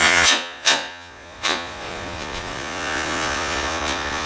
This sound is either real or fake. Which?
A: fake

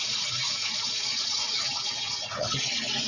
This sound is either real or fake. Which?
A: fake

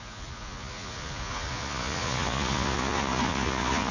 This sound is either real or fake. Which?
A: fake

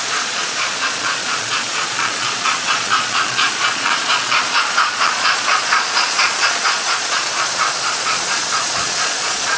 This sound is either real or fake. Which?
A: fake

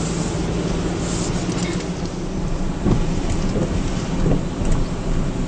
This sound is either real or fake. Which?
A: real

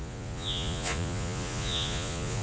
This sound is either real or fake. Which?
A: fake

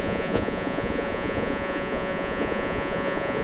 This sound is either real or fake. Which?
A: fake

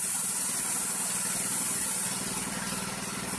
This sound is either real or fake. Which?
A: real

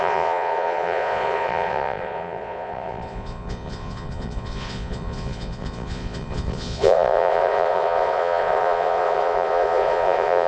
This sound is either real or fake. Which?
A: fake